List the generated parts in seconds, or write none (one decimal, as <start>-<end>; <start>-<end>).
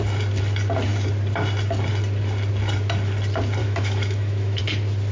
3.6-4.6